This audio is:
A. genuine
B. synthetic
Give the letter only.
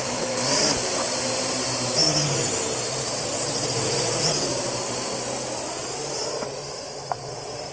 B